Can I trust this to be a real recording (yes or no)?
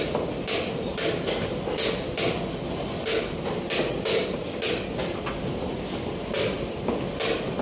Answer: yes